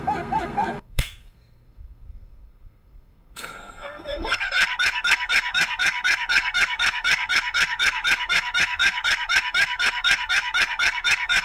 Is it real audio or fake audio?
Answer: fake